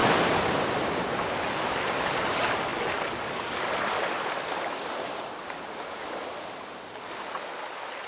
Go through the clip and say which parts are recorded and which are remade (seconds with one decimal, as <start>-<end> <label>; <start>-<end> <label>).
0.0-8.1 recorded